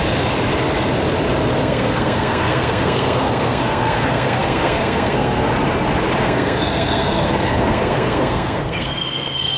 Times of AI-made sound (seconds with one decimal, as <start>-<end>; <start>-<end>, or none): 1.6-5.5; 6.2-9.6